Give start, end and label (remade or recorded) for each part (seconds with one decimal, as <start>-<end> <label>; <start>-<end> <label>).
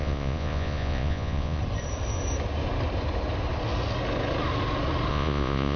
0.0-1.6 remade; 1.6-5.1 recorded; 5.1-5.8 remade